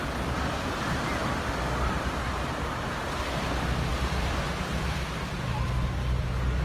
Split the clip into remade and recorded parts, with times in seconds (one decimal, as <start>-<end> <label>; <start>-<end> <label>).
0.0-6.6 recorded